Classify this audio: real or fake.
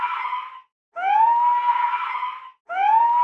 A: real